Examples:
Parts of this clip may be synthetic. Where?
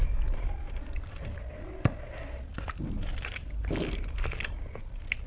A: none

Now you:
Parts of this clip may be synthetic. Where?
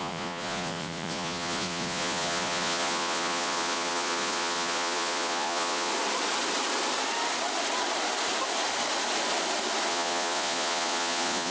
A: 0.0-5.9; 9.9-11.5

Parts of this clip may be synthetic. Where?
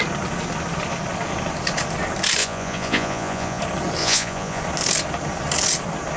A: 2.4-3.6; 4.0-4.6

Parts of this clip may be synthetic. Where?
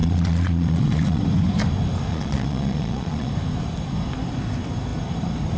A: 0.0-1.2; 2.1-3.3